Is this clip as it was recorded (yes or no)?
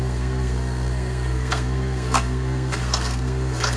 no